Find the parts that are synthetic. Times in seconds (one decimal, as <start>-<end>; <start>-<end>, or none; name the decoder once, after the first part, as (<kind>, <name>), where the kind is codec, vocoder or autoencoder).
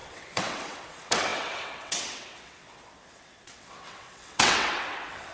0.0-5.3 (vocoder, WaveNeXt)